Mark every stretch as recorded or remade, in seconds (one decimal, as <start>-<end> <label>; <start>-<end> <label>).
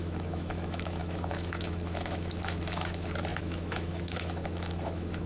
0.0-5.3 remade